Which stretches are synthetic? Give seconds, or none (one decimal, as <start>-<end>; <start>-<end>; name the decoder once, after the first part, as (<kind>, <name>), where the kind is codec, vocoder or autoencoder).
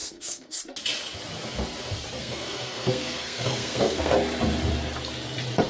0.0-0.6 (codec, SNAC); 2.2-4.1